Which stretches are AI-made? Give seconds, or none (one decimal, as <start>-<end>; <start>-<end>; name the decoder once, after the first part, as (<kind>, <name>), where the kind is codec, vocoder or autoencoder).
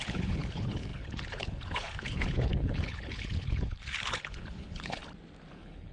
0.0-5.0 (codec, HILCodec); 5.5-5.9